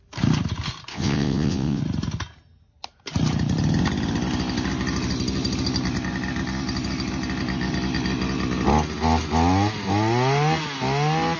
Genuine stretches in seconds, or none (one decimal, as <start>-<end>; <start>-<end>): 0.0-0.9; 1.8-11.4